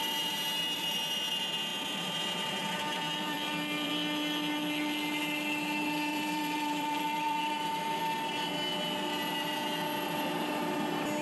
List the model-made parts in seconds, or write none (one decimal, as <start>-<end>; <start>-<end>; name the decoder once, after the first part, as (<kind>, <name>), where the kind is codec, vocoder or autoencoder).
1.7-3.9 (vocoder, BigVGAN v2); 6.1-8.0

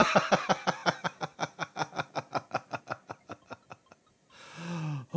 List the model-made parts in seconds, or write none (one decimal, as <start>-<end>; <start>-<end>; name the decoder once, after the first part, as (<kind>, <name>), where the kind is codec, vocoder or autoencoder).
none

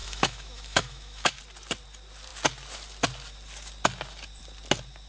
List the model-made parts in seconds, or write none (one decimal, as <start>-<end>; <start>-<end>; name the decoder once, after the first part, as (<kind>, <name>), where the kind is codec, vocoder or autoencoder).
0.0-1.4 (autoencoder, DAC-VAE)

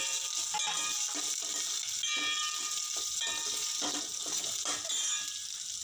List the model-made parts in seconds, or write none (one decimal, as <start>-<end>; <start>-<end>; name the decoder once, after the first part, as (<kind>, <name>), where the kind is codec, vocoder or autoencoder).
none

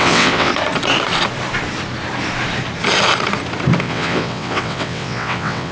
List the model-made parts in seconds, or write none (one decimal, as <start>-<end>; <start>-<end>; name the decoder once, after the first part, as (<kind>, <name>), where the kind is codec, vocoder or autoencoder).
0.0-0.5 (vocoder, WaveNeXt); 3.8-5.7

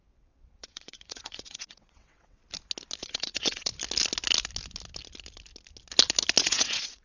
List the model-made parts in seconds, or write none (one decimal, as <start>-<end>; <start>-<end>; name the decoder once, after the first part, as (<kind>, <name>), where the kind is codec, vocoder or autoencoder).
0.0-2.4 (vocoder, WaveNeXt); 3.0-3.7; 6.4-7.0

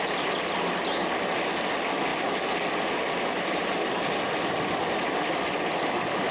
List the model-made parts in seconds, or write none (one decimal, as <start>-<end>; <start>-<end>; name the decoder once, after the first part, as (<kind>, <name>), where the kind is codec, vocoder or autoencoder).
none